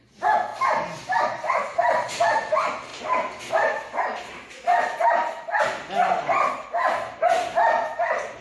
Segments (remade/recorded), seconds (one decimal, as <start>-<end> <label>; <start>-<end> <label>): 0.0-8.4 recorded

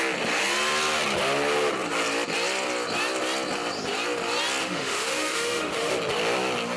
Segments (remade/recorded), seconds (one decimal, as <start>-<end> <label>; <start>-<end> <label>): 0.0-4.6 recorded; 4.6-5.9 remade; 5.9-6.8 recorded

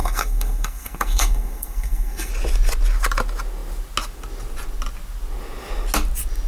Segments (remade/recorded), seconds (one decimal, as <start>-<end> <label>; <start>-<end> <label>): 0.0-2.3 remade; 2.3-6.5 recorded

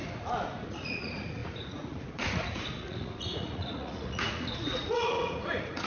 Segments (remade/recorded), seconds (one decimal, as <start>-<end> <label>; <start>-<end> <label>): 0.0-0.6 recorded; 0.6-5.9 remade

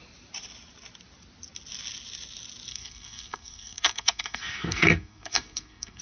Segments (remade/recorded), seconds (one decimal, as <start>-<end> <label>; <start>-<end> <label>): 0.0-2.7 recorded; 2.7-6.0 remade